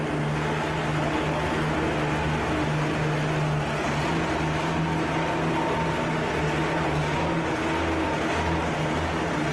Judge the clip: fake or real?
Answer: real